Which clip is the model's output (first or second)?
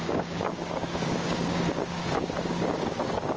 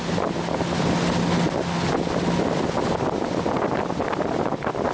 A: first